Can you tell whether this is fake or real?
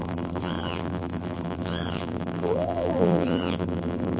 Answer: fake